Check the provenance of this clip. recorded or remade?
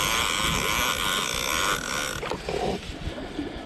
recorded